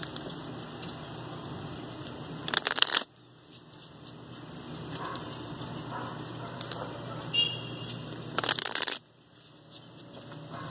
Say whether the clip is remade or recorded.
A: recorded